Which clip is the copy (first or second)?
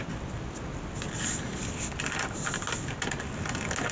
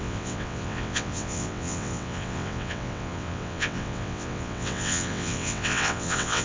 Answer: second